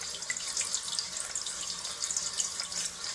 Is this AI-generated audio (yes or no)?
no